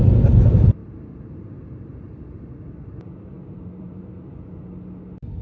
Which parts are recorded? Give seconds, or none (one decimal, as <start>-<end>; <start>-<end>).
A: 0.0-0.8; 4.0-5.4